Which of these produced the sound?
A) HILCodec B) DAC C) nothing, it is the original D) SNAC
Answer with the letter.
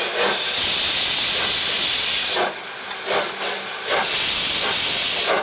C